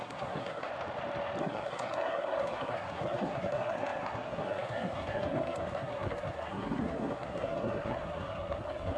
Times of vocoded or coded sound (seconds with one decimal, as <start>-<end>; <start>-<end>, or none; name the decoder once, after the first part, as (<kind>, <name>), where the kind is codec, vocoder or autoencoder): 0.0-0.7 (codec, SNAC); 1.4-9.0